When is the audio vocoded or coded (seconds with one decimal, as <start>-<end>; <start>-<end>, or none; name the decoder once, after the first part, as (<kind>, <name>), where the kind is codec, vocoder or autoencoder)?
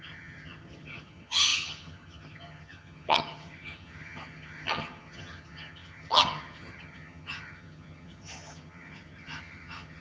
0.0-10.0 (vocoder, HiFi-GAN)